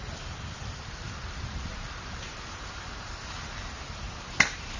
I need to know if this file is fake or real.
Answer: fake